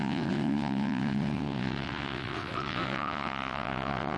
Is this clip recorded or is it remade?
remade